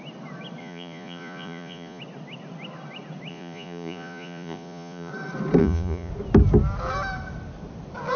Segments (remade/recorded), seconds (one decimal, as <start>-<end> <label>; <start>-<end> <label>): 0.0-0.6 recorded; 0.6-2.0 remade; 2.0-3.3 recorded; 3.3-5.1 remade; 5.1-5.6 recorded; 5.6-6.1 remade; 6.1-8.2 recorded